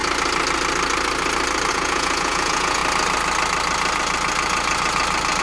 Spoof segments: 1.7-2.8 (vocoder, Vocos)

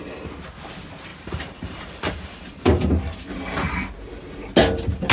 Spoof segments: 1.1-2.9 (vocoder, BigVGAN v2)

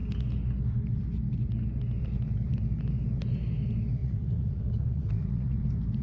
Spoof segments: 4.0-5.6 (vocoder, Vocos)

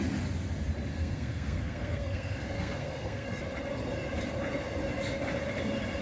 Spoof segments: 0.9-3.4 (codec, SNAC)